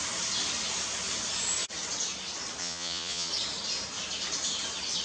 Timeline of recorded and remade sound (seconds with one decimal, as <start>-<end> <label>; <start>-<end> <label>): 0.0-2.6 recorded; 2.6-3.3 remade; 3.3-5.0 recorded